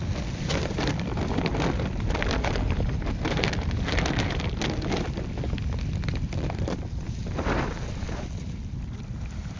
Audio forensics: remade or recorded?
recorded